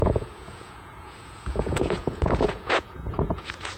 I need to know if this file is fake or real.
fake